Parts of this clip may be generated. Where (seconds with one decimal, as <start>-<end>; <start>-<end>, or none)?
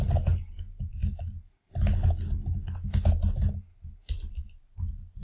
none